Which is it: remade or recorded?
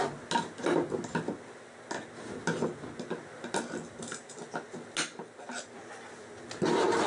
recorded